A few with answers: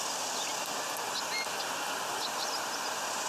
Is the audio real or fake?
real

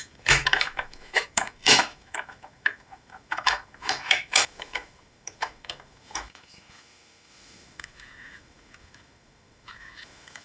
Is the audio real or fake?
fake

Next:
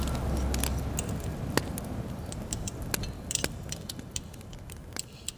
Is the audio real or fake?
real